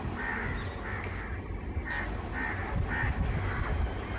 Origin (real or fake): real